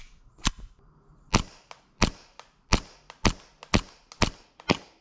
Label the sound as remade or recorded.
recorded